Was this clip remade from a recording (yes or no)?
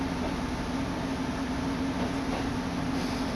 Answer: no